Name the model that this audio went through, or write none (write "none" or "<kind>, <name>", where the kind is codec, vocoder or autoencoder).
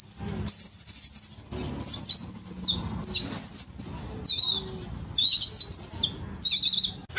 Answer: none